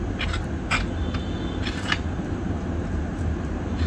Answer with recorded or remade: remade